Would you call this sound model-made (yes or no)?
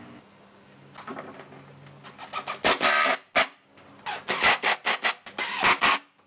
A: no